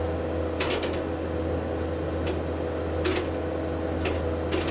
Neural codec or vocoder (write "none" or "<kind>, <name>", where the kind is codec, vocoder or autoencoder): none